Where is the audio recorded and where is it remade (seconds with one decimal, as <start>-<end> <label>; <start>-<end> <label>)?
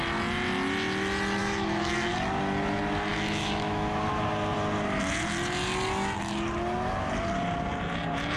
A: 0.0-1.4 recorded; 1.4-2.1 remade; 2.1-3.1 recorded; 3.1-4.1 remade; 4.1-8.4 recorded